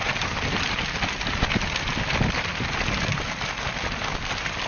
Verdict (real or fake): real